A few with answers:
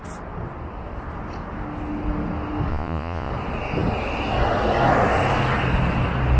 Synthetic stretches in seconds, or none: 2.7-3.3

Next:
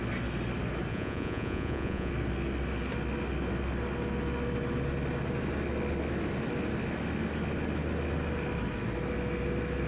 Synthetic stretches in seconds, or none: 0.9-2.1

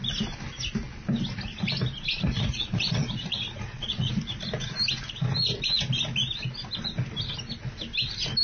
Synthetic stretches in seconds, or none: 2.1-4.1

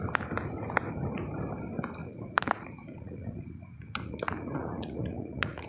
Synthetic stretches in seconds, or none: 2.0-5.7